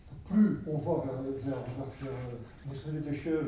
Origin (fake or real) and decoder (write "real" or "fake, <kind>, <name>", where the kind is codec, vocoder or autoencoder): real